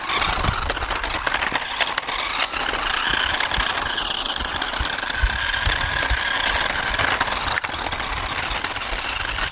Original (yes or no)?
yes